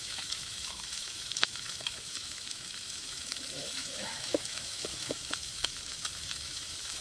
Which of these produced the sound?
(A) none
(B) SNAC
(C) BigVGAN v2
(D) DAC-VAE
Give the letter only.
D